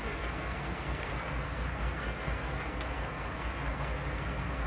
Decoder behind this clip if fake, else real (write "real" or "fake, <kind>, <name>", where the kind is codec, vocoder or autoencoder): fake, codec, SNAC